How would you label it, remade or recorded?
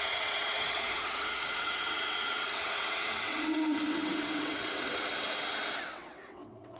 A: remade